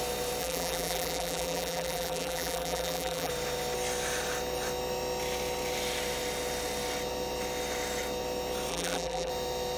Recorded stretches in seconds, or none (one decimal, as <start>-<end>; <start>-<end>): 0.0-0.4; 3.3-8.7; 9.3-9.8